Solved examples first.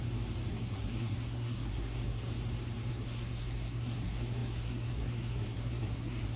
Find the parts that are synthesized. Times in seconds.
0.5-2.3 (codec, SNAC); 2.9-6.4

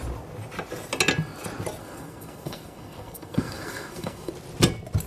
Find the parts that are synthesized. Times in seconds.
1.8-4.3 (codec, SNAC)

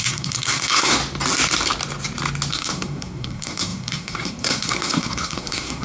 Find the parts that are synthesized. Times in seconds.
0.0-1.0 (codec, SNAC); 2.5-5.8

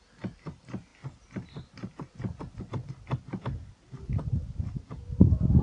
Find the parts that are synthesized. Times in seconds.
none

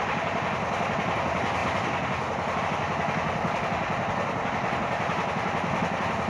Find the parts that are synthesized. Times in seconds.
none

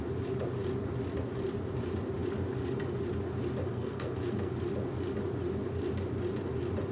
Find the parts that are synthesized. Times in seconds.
3.7-4.5 (codec, SNAC)